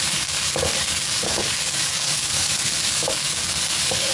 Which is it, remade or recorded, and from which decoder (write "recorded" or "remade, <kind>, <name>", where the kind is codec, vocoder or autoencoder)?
remade, codec, DAC